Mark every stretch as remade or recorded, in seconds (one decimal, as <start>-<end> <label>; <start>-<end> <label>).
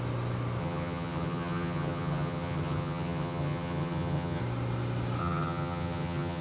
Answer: 0.0-0.6 recorded; 0.6-4.4 remade; 4.4-5.2 recorded; 5.2-6.4 remade